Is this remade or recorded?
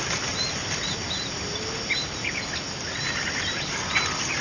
recorded